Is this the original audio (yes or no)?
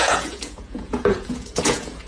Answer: no